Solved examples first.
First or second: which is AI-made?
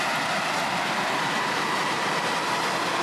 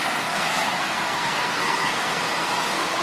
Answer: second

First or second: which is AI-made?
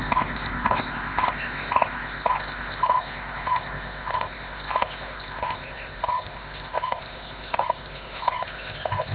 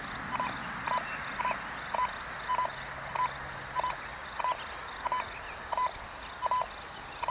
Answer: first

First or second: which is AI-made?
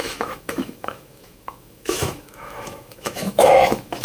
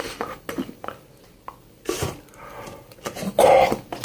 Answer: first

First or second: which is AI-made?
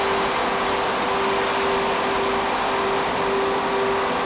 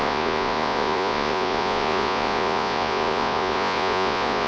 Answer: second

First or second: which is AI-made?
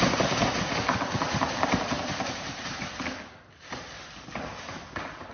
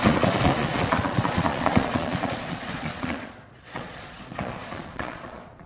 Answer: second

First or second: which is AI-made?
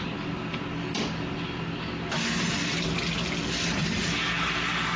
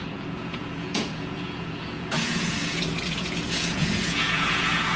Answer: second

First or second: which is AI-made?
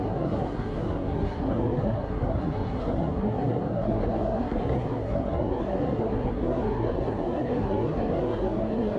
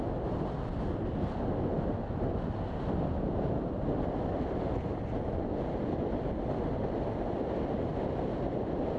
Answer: first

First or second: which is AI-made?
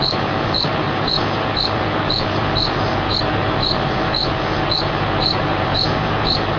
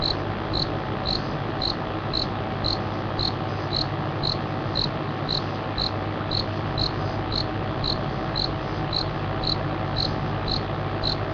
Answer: first